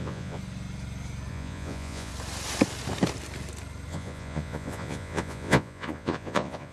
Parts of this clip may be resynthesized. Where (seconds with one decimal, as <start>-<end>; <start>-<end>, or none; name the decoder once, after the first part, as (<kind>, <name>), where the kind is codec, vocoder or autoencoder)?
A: 0.0-0.4 (vocoder, Vocos); 1.3-2.1; 3.9-6.7